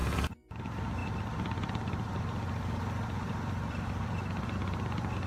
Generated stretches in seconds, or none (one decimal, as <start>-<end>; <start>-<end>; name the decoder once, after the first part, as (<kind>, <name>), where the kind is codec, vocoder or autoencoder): 0.0-0.6 (vocoder, Vocos)